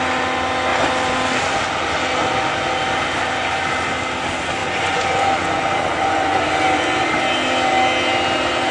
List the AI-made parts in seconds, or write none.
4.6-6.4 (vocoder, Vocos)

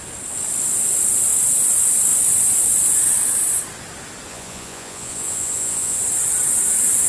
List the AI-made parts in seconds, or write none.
4.3-6.0 (vocoder, Vocos)

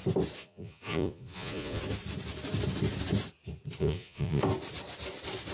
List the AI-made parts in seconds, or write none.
0.4-1.8 (vocoder, Vocos); 3.8-4.4

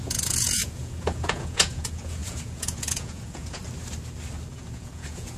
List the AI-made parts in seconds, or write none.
0.0-3.6 (vocoder, Vocos); 4.5-5.4

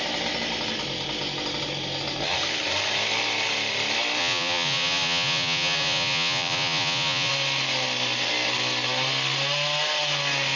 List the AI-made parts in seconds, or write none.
4.2-7.3 (vocoder, Vocos)